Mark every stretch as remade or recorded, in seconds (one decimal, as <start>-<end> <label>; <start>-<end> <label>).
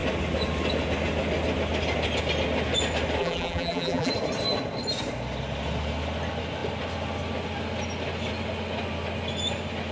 0.0-3.2 recorded; 3.2-4.1 remade; 4.1-9.9 recorded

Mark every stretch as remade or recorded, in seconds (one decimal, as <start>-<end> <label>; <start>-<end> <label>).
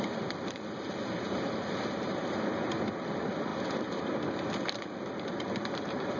0.0-6.2 remade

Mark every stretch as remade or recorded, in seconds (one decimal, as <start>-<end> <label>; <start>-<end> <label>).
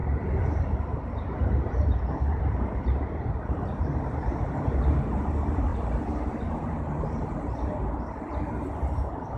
0.0-9.4 remade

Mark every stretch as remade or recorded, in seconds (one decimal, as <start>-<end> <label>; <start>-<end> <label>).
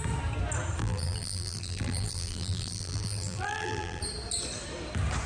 0.0-0.8 recorded; 0.8-4.0 remade; 4.0-5.3 recorded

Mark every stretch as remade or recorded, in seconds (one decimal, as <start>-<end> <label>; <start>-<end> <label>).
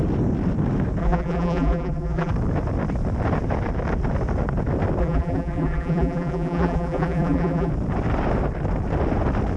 0.0-1.0 recorded; 1.0-2.3 remade; 2.3-5.0 recorded; 5.0-7.7 remade; 7.7-9.6 recorded